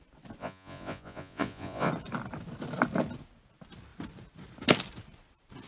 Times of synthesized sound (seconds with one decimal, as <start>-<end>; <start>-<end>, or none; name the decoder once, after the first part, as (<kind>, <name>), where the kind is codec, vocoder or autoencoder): 0.4-1.9 (vocoder, Vocos)